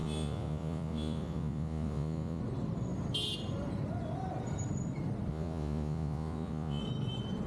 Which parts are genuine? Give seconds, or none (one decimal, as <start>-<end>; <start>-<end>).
2.4-5.3; 6.8-7.5